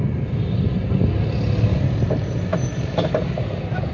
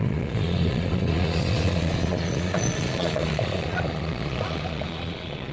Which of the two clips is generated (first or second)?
second